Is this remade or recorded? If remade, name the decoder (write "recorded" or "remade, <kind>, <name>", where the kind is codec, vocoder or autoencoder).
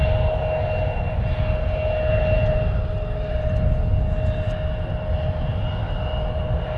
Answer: recorded